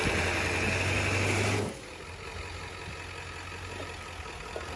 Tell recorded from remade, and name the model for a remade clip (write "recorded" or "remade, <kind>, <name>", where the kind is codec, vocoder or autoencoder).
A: recorded